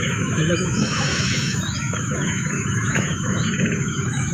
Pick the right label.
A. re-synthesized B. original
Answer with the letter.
A